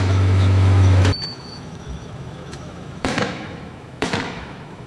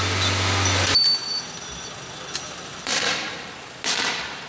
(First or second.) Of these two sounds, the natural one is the second